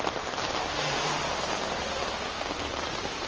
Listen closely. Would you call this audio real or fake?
fake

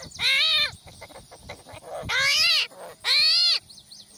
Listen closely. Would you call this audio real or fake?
real